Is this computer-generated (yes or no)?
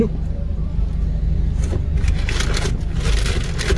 no